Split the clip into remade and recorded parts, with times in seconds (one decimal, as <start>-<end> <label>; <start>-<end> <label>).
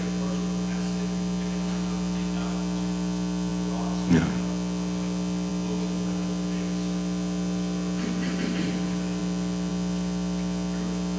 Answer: 0.0-11.2 recorded